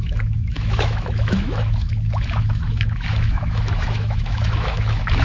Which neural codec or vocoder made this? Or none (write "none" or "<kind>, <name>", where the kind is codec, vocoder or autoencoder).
autoencoder, DAC-VAE